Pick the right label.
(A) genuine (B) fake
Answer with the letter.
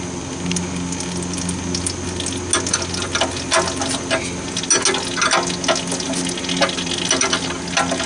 A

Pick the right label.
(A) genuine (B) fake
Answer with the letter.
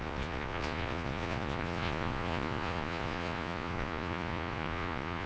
B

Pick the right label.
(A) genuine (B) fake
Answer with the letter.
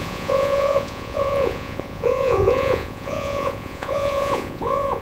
B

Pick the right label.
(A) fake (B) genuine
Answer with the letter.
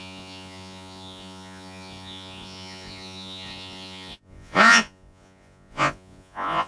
A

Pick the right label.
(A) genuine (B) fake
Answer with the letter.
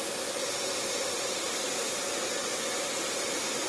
A